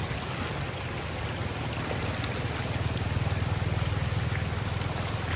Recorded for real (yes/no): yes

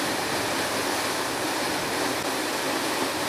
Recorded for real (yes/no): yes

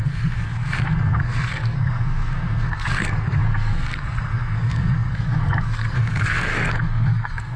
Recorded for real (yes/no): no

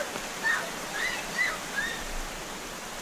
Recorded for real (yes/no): yes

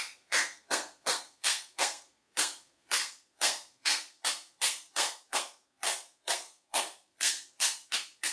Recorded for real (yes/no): no